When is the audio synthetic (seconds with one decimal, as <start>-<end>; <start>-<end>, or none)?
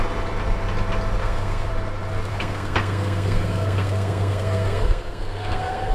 1.2-1.7; 2.3-5.9